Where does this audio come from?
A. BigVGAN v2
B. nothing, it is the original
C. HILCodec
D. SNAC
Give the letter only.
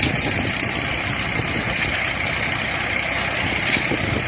B